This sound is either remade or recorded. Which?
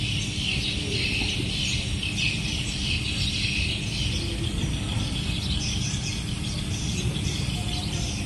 recorded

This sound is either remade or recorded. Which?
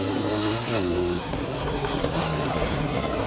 remade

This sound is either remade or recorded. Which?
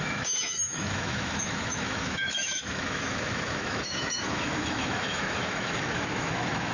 remade